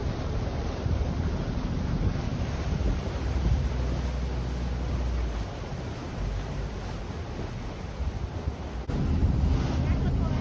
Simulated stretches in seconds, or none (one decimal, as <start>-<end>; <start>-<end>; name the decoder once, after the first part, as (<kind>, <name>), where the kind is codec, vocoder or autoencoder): 0.0-3.7 (vocoder, BigVGAN v2); 6.0-7.0